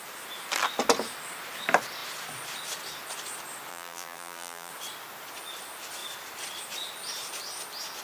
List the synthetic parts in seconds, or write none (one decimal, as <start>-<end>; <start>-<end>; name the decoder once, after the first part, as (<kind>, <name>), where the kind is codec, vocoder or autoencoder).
3.7-4.7 (vocoder, BigVGAN v2)